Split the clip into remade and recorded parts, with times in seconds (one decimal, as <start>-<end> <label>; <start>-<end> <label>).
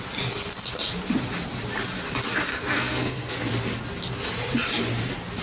0.0-2.5 recorded; 2.5-3.5 remade; 3.5-5.4 recorded